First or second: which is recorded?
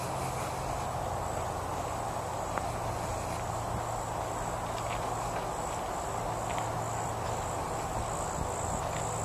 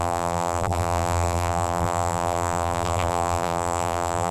first